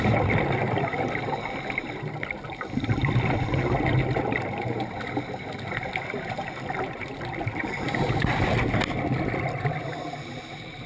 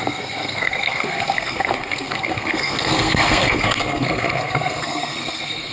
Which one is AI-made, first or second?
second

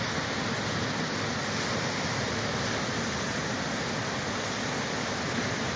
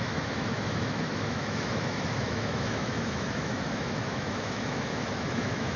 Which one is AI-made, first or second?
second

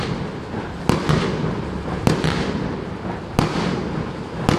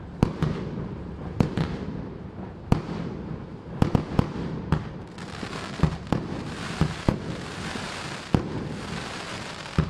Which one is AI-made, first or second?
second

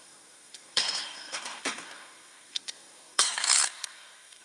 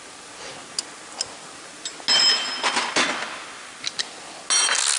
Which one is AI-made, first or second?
first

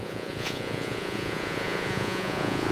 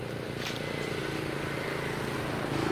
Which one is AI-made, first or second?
first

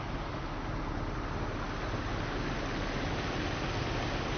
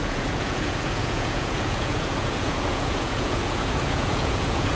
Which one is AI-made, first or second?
second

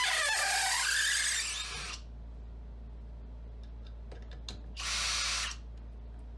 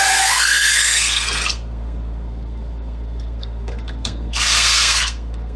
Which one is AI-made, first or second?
second